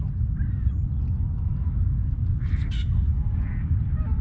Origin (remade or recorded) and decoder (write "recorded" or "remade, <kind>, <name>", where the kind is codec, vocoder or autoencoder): recorded